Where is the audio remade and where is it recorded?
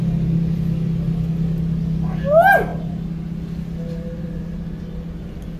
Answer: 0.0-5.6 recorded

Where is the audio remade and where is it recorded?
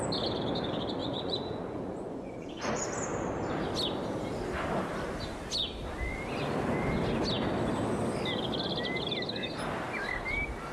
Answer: 0.0-1.0 recorded; 1.0-2.8 remade; 2.8-10.7 recorded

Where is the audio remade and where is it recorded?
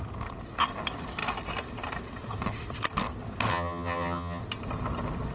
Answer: 0.0-3.5 recorded; 3.5-4.4 remade; 4.4-5.3 recorded